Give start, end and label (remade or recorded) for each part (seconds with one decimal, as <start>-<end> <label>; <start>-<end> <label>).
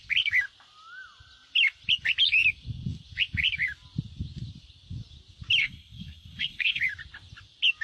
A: 0.0-5.6 recorded; 5.6-6.8 remade; 6.8-7.8 recorded